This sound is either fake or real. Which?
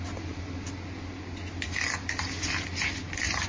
real